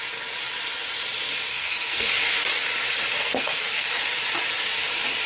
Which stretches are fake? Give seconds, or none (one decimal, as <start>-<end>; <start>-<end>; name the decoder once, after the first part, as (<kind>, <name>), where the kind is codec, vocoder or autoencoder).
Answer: 1.5-2.1 (codec, SNAC); 3.2-3.9